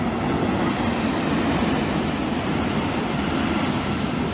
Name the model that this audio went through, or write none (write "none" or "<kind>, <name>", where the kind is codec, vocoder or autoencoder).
none